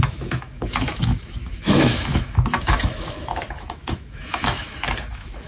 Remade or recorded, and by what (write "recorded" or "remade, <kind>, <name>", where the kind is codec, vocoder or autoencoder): remade, autoencoder, DAC-VAE